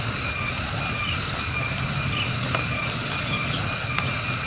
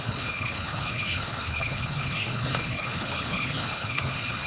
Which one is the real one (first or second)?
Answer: first